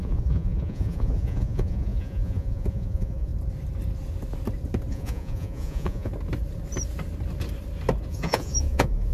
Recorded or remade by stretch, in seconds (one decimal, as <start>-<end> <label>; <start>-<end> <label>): 0.0-3.3 remade; 3.3-4.9 recorded; 4.9-6.1 remade; 6.1-8.1 recorded; 8.1-9.1 remade